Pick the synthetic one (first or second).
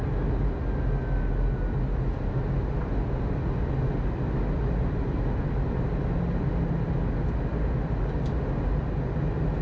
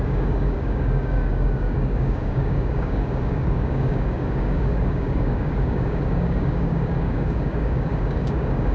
second